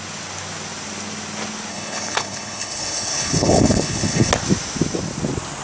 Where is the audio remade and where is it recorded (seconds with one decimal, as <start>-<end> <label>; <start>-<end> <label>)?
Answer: 0.0-1.7 recorded; 1.7-4.3 remade; 4.3-5.6 recorded